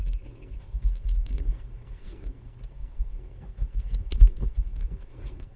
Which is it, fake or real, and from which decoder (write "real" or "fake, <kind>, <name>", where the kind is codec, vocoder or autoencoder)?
fake, codec, SNAC